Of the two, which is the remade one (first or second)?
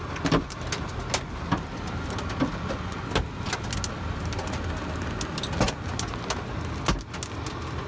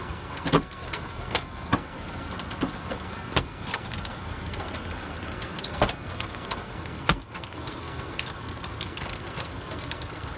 second